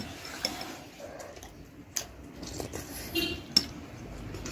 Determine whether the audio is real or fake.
real